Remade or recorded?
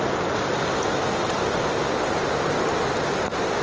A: recorded